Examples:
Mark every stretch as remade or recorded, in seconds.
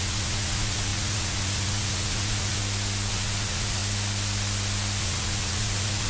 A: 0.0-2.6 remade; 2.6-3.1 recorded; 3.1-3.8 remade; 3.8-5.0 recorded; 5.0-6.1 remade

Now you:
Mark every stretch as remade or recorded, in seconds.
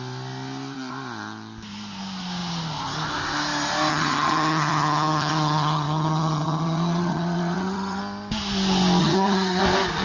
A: 0.0-3.9 recorded; 3.9-8.0 remade; 8.0-9.0 recorded; 9.0-9.6 remade; 9.6-10.0 recorded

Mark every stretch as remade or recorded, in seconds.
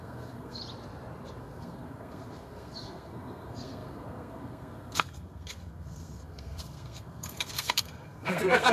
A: 0.0-0.6 remade; 0.6-1.4 recorded; 1.4-8.7 remade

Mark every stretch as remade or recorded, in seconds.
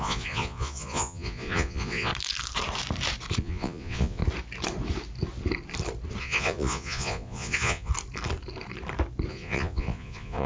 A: 0.0-2.1 remade; 2.1-3.4 recorded; 3.4-4.2 remade; 4.2-6.2 recorded; 6.2-7.9 remade; 7.9-9.3 recorded; 9.3-10.5 remade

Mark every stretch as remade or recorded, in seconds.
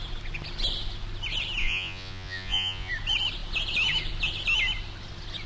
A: 0.0-1.6 recorded; 1.6-2.9 remade; 2.9-5.5 recorded